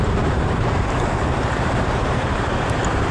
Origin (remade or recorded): remade